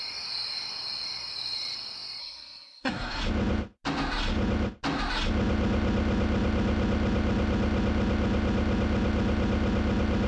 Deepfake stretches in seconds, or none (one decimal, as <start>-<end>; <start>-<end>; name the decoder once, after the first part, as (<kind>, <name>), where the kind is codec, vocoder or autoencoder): 2.2-3.2 (codec, SNAC)